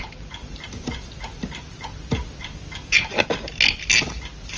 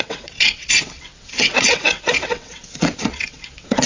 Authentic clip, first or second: first